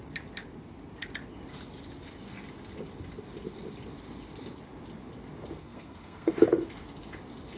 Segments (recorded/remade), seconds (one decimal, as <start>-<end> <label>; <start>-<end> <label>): 0.0-5.6 recorded; 5.6-6.3 remade; 6.3-7.6 recorded